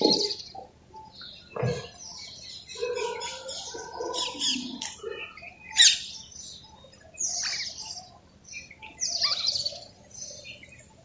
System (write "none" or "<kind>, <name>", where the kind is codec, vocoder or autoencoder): none